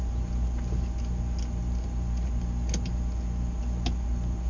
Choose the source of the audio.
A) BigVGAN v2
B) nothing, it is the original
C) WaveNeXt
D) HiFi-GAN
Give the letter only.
B